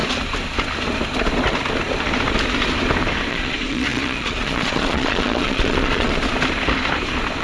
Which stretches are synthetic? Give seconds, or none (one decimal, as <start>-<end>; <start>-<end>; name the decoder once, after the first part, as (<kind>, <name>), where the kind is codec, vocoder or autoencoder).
3.3-6.2 (vocoder, Vocos)